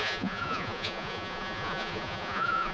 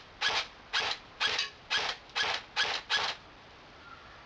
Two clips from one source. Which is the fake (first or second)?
first